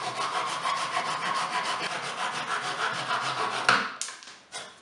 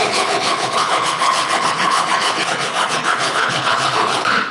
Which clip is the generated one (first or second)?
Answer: second